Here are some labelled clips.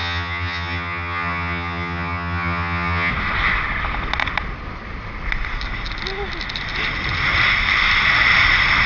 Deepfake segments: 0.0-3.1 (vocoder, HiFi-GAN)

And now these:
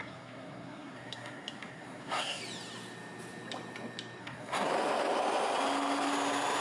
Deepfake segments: 0.0-2.4 (codec, SNAC); 4.2-4.7

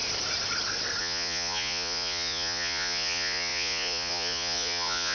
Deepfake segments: 1.0-5.1 (vocoder, Vocos)

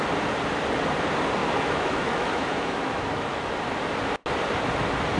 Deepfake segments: 1.4-3.5 (autoencoder, DAC-VAE)

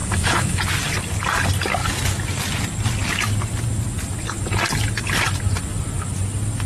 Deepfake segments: 0.0-0.6 (autoencoder, DAC-VAE)

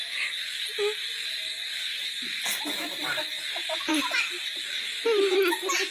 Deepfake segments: 1.9-2.6 (vocoder, BigVGAN v2); 3.9-4.7

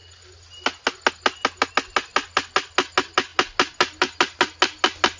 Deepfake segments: none